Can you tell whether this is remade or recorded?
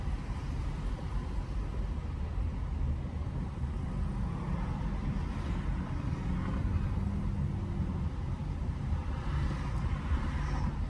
recorded